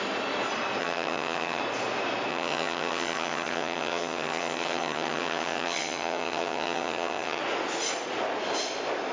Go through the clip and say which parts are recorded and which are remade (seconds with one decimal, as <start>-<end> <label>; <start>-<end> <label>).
0.0-0.8 recorded; 0.8-1.6 remade; 1.6-2.3 recorded; 2.3-7.4 remade; 7.4-9.1 recorded